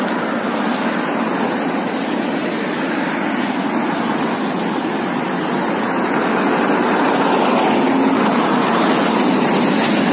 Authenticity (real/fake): real